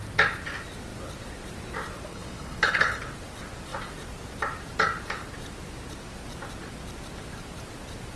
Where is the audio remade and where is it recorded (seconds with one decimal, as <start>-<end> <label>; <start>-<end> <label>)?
0.0-2.1 recorded; 2.1-3.0 remade; 3.0-8.2 recorded